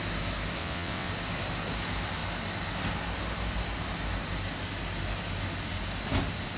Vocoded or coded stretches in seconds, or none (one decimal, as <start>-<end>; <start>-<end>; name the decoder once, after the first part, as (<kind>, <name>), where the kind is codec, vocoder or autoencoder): 0.6-1.1 (vocoder, WaveNeXt)